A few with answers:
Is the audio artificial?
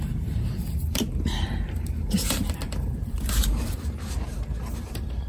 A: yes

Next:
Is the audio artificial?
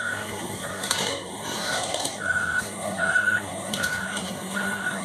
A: yes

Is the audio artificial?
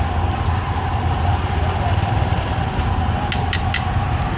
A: no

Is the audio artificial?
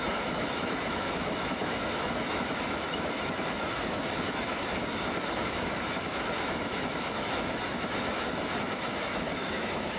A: yes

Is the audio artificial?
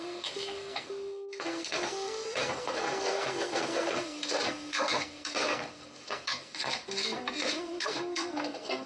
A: yes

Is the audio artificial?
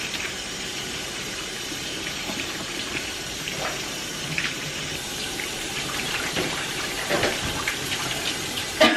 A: yes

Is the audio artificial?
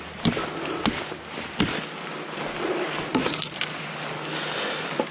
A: no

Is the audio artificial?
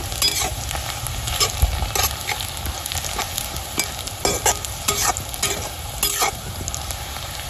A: no